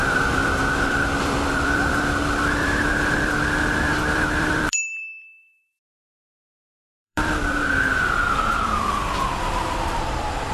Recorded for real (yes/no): no